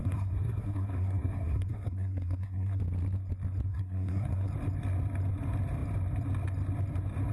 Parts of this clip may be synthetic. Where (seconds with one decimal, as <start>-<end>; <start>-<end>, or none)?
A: 0.0-2.8; 3.7-4.5